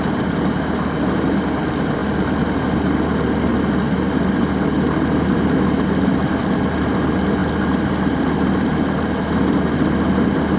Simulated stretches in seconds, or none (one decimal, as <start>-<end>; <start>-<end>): none